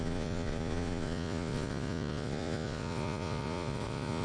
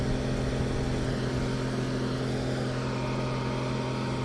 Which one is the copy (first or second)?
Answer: first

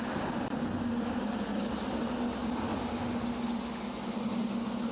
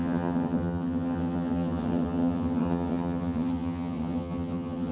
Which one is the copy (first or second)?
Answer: second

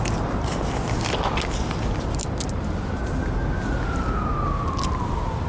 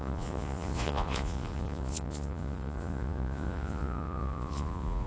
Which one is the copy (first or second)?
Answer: second